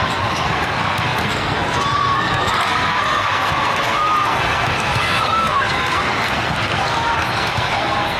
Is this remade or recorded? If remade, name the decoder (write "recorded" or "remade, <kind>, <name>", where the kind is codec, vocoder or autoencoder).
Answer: remade, codec, SNAC